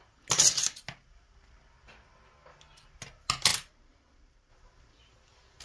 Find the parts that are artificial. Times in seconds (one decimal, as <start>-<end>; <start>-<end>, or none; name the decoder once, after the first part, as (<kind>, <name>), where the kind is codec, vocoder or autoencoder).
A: 3.5-4.5 (vocoder, BigVGAN v2)